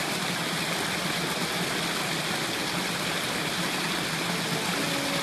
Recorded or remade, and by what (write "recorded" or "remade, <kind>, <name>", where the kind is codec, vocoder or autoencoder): recorded